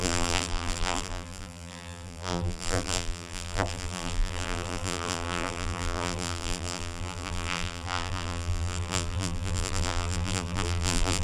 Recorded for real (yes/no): no